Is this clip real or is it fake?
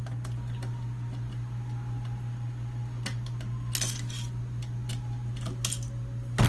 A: real